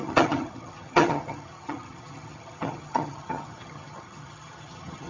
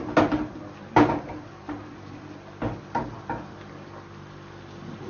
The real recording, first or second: second